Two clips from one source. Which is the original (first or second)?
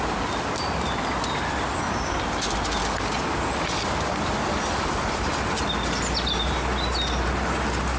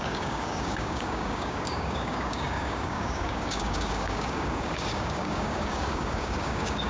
first